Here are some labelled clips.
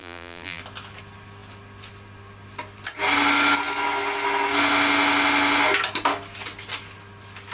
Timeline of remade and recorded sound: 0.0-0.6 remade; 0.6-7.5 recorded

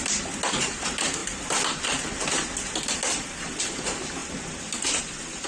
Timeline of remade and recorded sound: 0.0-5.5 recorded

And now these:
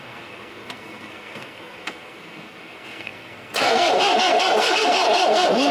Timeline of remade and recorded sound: 0.0-5.7 remade

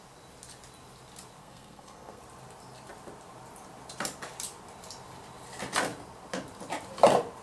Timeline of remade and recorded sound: 0.0-1.4 recorded; 1.4-2.2 remade; 2.2-7.4 recorded

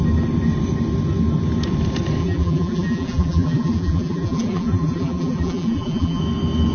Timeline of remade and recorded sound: 0.0-2.2 recorded; 2.2-6.2 remade; 6.2-6.7 recorded

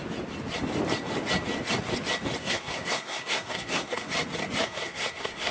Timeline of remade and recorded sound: 0.0-2.4 recorded; 2.4-4.1 remade; 4.1-4.6 recorded; 4.6-5.5 remade